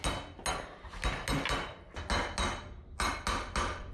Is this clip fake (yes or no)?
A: no